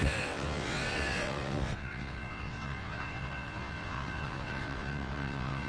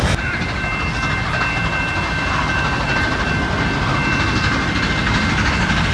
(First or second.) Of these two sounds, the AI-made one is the first